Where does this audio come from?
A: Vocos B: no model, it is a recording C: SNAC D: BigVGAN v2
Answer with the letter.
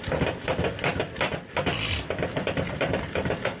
B